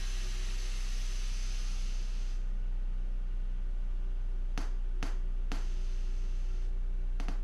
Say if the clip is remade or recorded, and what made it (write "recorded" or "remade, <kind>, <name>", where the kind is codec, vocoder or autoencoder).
recorded